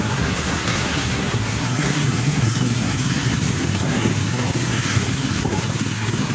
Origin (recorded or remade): remade